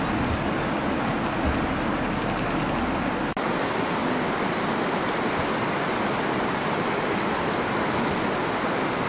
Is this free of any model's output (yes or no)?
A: yes